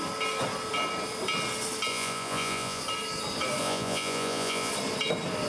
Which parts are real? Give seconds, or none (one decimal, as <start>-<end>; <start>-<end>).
0.0-1.9; 2.8-3.6; 4.7-5.5